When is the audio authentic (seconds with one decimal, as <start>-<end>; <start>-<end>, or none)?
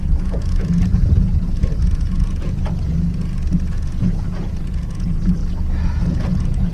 5.4-6.0